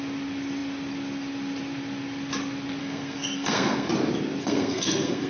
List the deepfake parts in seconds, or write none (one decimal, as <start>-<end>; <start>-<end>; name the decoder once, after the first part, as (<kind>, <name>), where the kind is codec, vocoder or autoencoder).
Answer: 2.8-3.9 (codec, SNAC); 4.4-5.3